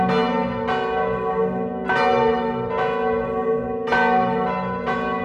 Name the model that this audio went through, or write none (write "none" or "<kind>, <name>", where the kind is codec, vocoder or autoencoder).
none